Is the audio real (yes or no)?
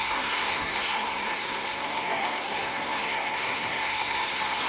no